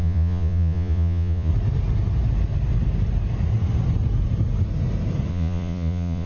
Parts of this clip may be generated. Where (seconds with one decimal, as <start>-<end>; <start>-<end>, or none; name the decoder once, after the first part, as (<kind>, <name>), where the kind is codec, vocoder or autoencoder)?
0.0-1.5 (vocoder, Vocos); 5.3-6.3